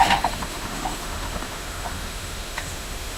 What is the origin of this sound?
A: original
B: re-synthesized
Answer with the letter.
B